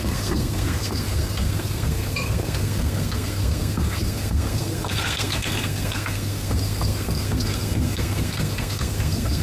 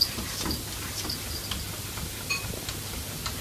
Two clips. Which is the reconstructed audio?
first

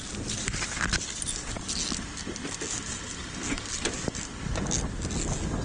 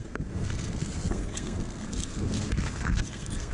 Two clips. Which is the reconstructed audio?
second